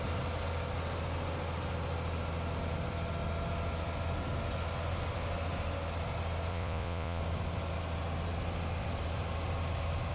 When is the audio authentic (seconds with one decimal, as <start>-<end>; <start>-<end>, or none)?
0.0-6.5; 7.2-10.1